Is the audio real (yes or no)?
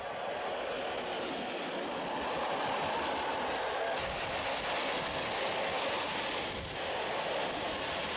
yes